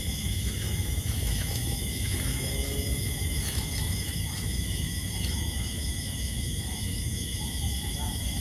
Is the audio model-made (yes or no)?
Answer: yes